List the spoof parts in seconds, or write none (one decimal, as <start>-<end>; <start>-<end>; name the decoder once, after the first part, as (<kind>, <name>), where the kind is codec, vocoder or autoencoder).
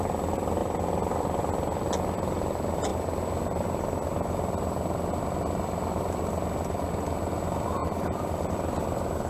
7.8-8.4 (vocoder, BigVGAN v2)